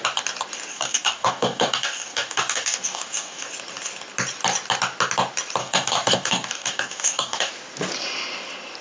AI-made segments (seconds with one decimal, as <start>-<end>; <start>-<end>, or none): 0.7-3.5; 5.6-7.5